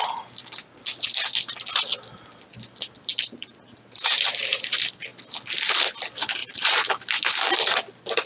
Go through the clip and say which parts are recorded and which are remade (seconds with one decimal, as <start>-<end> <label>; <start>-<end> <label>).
0.0-3.1 recorded; 3.1-4.5 remade; 4.5-6.4 recorded; 6.4-6.9 remade; 6.9-8.3 recorded

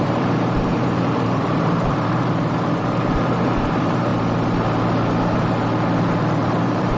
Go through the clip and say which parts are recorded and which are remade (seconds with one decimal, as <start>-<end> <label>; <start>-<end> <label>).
0.0-4.1 remade; 4.1-6.5 recorded; 6.5-7.0 remade

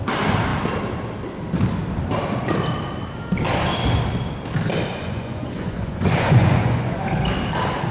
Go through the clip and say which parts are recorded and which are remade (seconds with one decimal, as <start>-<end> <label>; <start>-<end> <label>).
0.0-4.9 recorded; 4.9-7.0 remade; 7.0-7.9 recorded

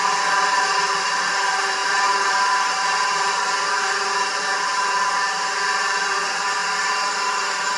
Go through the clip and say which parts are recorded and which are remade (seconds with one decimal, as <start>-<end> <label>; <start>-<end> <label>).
0.0-7.8 remade

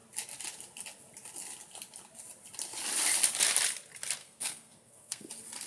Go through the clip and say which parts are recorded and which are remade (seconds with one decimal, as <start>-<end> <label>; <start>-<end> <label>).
0.0-4.2 recorded; 4.2-5.3 remade; 5.3-5.7 recorded